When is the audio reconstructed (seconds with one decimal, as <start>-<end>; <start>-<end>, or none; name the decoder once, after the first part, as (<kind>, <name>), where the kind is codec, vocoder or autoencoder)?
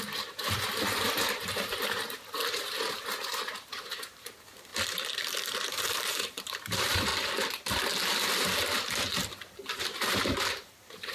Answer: 0.0-4.7 (vocoder, BigVGAN v2); 5.4-7.1; 9.8-11.1